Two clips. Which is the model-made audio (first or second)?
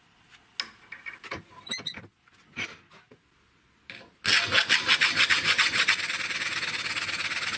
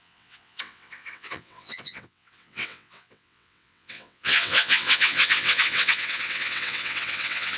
second